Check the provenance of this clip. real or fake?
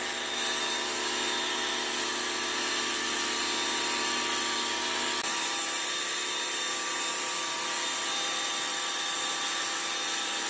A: real